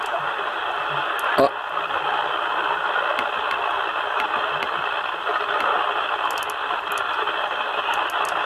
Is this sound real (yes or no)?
yes